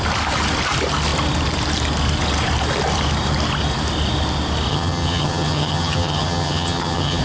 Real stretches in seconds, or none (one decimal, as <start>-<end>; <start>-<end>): 0.0-4.7